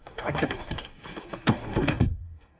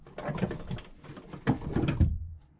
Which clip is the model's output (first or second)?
first